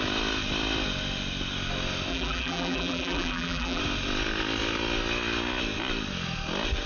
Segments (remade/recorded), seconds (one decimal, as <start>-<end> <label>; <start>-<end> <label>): 0.0-2.1 recorded; 2.1-3.8 remade; 3.8-6.9 recorded